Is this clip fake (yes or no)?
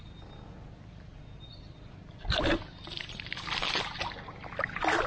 no